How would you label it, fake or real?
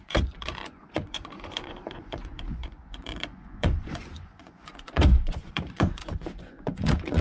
fake